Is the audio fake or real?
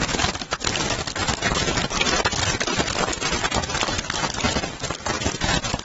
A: real